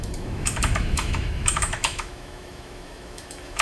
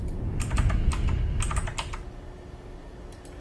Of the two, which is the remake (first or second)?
first